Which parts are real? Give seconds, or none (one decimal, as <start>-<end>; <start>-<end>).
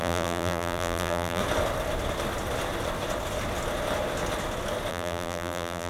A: 1.4-4.9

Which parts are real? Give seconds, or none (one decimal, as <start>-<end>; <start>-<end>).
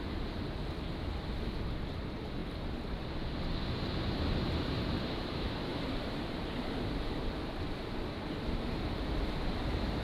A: 0.0-2.4; 3.0-5.7; 9.0-10.0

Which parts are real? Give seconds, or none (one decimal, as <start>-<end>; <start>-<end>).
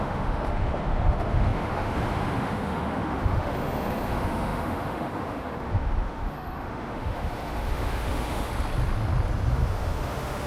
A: 8.5-9.5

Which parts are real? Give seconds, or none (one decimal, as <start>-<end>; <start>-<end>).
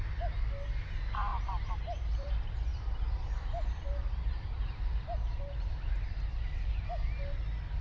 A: 0.0-1.3; 2.3-2.7; 7.0-7.8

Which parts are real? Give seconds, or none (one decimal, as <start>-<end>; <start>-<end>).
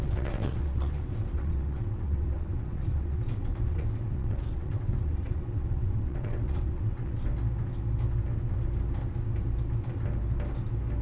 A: 7.3-11.0